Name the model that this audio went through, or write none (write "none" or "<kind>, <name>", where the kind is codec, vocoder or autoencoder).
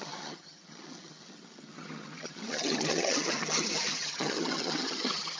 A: vocoder, HiFi-GAN